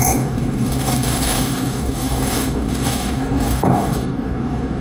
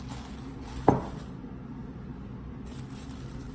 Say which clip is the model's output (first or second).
first